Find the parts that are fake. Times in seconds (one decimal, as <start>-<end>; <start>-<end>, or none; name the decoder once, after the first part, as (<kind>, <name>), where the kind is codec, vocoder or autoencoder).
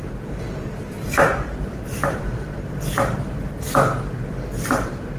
0.0-2.9 (vocoder, BigVGAN v2); 4.5-5.2